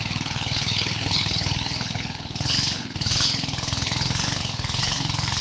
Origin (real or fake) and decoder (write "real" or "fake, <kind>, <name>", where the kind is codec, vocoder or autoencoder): fake, codec, HILCodec